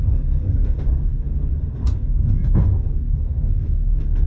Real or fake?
fake